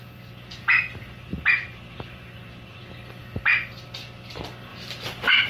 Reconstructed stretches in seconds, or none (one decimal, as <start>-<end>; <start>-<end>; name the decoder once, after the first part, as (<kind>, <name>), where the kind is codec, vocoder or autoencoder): 1.3-2.8 (vocoder, BigVGAN v2); 4.7-5.5